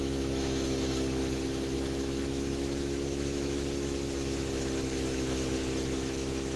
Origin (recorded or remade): remade